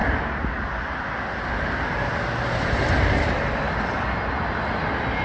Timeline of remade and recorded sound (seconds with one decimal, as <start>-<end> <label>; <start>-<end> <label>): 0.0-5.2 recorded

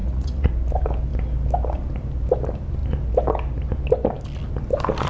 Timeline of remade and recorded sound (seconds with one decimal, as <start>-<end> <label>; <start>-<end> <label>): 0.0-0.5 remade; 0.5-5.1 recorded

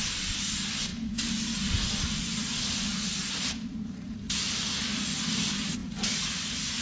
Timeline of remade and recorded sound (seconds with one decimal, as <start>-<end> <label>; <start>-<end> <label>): 0.0-6.8 recorded

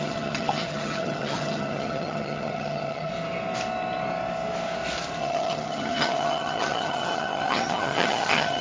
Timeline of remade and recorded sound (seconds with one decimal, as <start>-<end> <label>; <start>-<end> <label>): 0.0-3.1 remade; 3.1-5.2 recorded; 5.2-8.6 remade

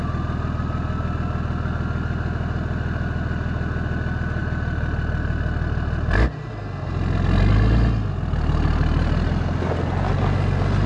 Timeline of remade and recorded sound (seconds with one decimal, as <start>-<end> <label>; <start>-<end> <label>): 0.0-10.9 recorded

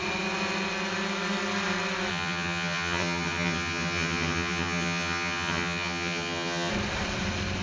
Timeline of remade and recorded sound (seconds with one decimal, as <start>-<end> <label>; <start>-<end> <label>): 0.0-2.1 recorded; 2.1-6.7 remade; 6.7-7.6 recorded